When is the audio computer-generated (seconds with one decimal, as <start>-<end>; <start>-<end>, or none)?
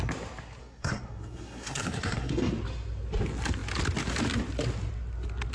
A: 0.6-2.5